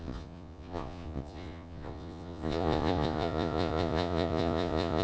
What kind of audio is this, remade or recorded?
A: remade